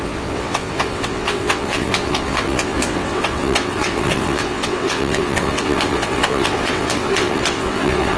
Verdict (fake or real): fake